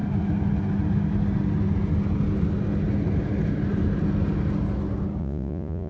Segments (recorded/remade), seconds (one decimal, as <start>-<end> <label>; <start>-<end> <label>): 0.0-5.2 recorded; 5.2-5.9 remade